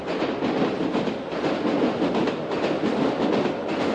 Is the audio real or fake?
real